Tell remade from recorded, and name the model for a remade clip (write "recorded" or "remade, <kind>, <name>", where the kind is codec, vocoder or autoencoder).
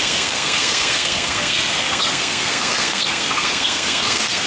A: remade, codec, SNAC